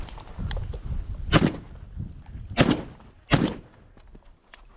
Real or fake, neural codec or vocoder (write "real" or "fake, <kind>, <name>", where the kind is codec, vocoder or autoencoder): real